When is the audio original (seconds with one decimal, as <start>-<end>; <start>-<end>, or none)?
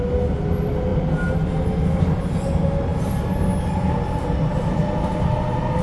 0.0-5.8